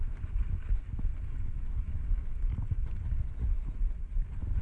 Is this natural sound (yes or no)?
yes